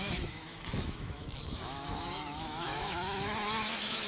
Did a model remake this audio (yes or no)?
yes